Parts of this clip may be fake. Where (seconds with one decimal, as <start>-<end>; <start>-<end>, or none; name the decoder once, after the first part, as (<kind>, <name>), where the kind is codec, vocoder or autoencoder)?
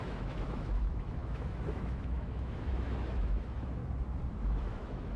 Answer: 0.0-3.8 (autoencoder, DAC-VAE); 4.4-5.2